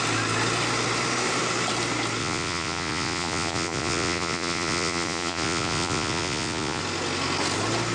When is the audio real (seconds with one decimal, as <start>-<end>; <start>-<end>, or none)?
0.0-2.2; 6.8-7.9